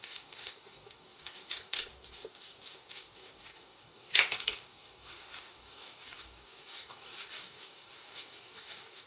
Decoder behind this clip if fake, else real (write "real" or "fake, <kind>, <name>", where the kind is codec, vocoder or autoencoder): fake, codec, DAC